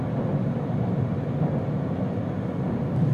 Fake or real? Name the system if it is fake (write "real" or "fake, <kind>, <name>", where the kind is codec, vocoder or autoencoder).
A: real